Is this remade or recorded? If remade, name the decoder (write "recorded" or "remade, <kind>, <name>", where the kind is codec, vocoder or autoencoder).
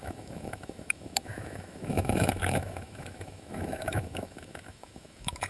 remade, autoencoder, DAC-VAE